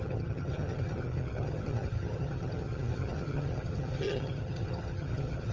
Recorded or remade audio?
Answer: remade